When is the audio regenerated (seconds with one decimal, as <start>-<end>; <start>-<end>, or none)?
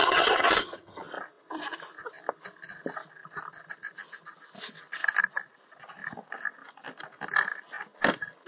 0.0-1.0